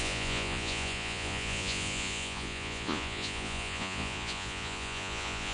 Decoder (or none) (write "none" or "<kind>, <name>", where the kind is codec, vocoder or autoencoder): vocoder, Vocos